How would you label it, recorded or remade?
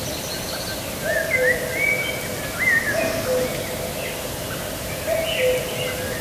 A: recorded